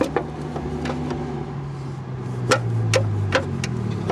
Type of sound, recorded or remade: recorded